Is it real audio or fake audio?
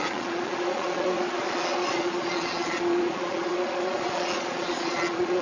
fake